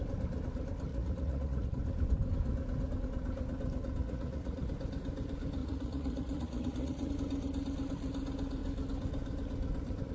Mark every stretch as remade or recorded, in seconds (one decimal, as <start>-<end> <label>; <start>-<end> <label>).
0.0-0.9 recorded; 0.9-1.7 remade; 1.7-4.0 recorded; 4.0-4.7 remade; 4.7-5.6 recorded; 5.6-7.1 remade; 7.1-10.1 recorded